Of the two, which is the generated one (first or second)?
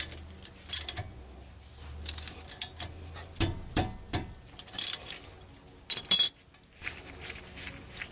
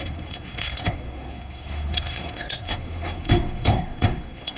second